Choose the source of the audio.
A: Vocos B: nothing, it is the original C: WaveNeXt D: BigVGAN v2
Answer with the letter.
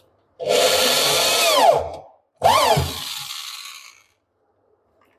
B